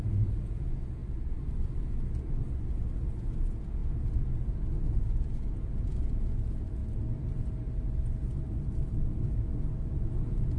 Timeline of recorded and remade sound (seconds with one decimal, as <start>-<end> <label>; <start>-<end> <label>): 0.0-1.0 remade; 1.0-3.2 recorded; 3.2-3.8 remade; 3.8-4.5 recorded; 4.5-6.8 remade; 6.8-10.1 recorded; 10.1-10.6 remade